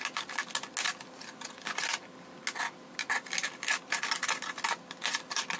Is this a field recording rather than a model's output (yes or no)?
yes